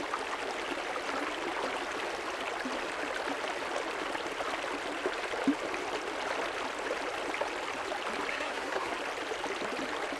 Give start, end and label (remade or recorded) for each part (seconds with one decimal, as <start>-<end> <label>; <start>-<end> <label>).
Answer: 0.0-8.3 recorded; 8.3-8.9 remade; 8.9-10.2 recorded